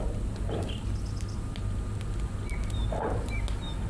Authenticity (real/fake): real